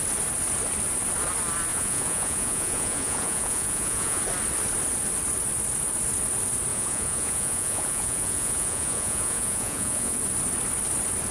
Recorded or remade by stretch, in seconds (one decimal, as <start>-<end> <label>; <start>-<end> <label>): 0.0-1.7 recorded; 1.7-4.2 remade; 4.2-6.7 recorded; 6.7-10.2 remade; 10.2-11.3 recorded